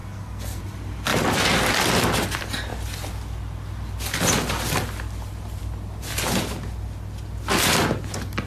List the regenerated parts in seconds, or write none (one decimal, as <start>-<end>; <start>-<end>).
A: 0.0-0.6